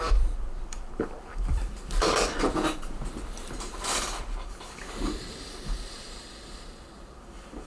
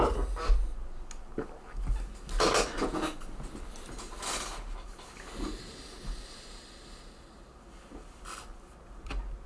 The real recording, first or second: second